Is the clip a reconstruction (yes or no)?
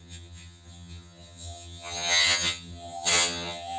yes